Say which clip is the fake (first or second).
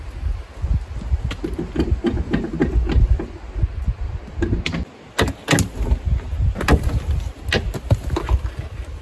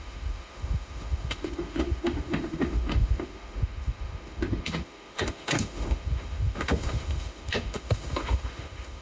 second